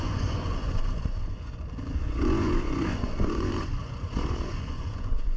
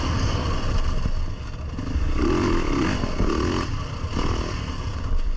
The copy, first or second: first